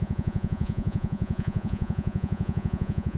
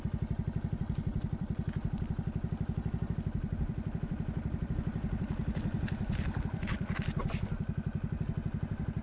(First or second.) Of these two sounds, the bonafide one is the second